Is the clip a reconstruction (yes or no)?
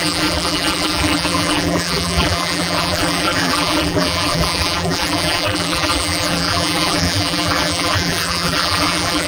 yes